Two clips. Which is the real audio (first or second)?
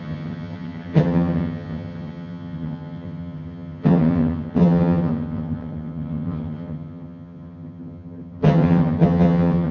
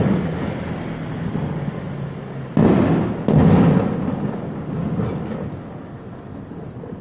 second